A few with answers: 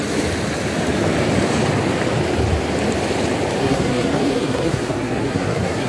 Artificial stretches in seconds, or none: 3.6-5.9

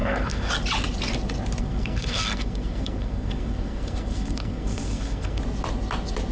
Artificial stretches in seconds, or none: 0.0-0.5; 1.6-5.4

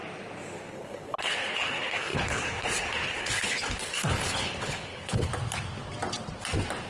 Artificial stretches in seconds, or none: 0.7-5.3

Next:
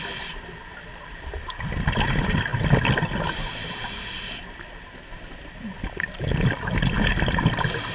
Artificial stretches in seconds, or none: none